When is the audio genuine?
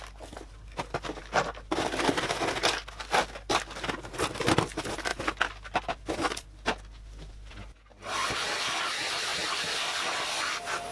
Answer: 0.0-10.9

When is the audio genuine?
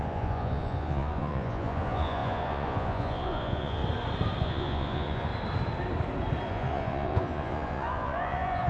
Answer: 3.8-4.4; 5.3-6.5